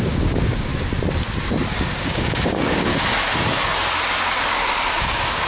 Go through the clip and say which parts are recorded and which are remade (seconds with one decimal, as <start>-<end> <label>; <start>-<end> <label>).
0.0-0.7 remade; 0.7-1.7 recorded; 1.7-2.9 remade; 2.9-5.0 recorded; 5.0-5.5 remade